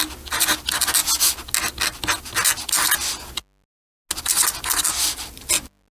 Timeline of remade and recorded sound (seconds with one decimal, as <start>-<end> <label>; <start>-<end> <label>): 0.0-6.0 recorded